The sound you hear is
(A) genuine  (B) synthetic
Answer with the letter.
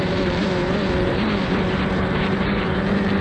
B